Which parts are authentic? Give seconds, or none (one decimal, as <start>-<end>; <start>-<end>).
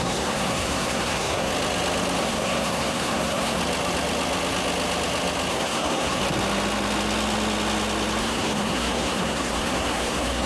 1.5-2.2; 3.6-5.5; 6.2-8.2